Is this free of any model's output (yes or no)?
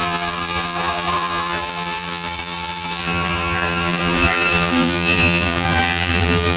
no